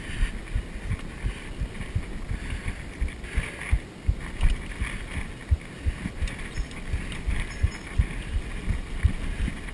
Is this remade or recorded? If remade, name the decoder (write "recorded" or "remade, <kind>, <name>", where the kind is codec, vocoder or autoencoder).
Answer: recorded